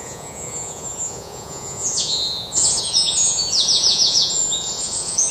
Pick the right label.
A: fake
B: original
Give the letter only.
A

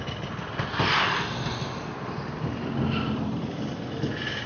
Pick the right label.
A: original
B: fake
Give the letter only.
A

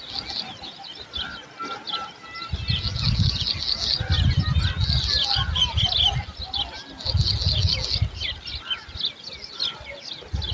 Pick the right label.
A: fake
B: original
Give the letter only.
B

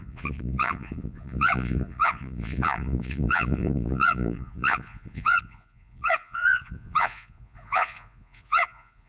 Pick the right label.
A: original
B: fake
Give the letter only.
B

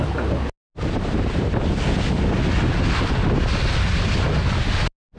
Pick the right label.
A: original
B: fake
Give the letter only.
A